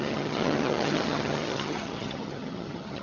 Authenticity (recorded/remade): remade